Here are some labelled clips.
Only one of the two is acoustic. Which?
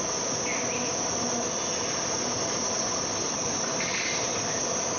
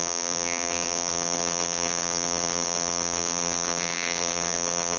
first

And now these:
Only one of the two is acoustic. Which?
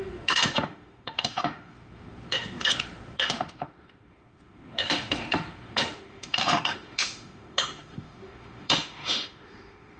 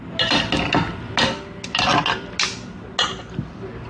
second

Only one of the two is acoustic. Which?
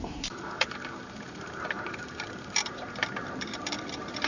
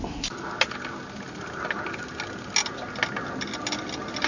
second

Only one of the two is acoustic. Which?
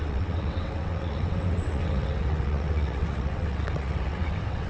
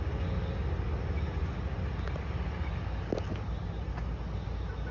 second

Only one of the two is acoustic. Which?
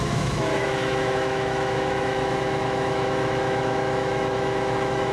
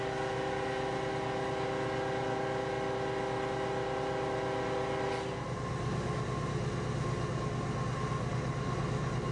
second